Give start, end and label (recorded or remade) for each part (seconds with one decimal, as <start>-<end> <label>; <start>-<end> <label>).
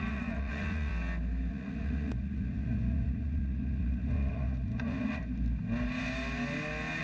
0.0-0.9 remade; 0.9-1.5 recorded; 1.5-5.2 remade; 5.2-7.0 recorded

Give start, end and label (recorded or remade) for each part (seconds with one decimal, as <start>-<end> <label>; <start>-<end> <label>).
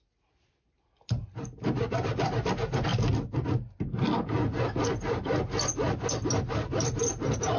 0.0-7.6 recorded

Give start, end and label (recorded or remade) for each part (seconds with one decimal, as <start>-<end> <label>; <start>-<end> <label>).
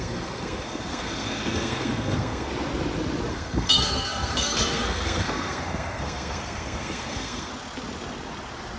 0.0-2.5 remade; 2.5-3.3 recorded; 3.3-7.5 remade; 7.5-8.8 recorded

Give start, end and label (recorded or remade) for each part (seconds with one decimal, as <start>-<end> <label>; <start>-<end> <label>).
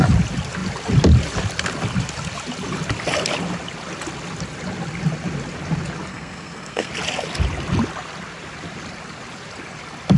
0.0-6.1 recorded; 6.1-6.9 remade; 6.9-10.2 recorded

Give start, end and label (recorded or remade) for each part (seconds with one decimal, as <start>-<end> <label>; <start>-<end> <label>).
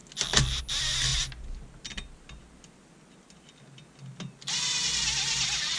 0.0-5.8 recorded